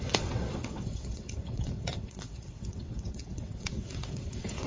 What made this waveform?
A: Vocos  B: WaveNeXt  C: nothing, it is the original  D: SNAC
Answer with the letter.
B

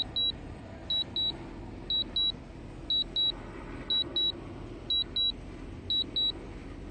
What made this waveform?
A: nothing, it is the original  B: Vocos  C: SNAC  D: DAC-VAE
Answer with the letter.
A